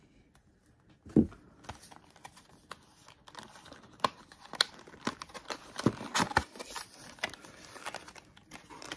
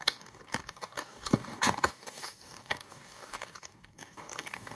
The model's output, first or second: second